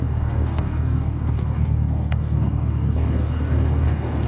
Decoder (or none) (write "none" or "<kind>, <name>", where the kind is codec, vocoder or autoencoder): codec, DAC